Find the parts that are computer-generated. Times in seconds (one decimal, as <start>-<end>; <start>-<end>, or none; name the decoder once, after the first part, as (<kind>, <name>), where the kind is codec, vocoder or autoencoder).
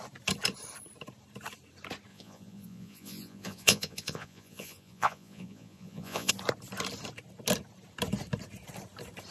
2.1-6.3 (vocoder, Vocos)